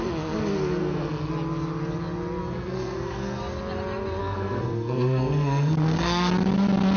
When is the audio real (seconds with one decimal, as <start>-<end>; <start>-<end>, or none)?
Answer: 0.0-0.8; 1.3-2.4; 3.4-4.2; 6.3-7.0